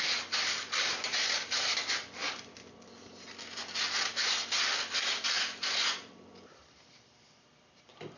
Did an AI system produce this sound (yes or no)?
no